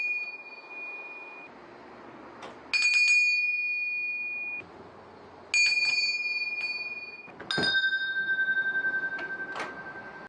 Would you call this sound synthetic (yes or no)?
no